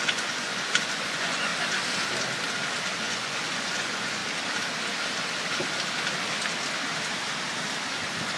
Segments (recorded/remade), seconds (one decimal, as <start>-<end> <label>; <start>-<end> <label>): 0.0-1.5 remade; 1.5-3.0 recorded; 3.0-4.2 remade; 4.2-7.9 recorded; 7.9-8.4 remade